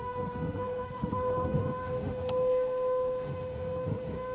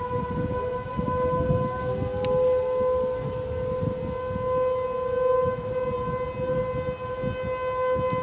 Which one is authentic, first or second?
second